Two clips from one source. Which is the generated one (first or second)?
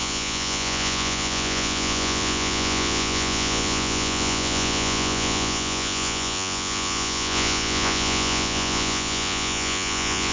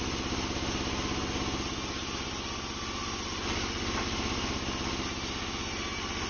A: first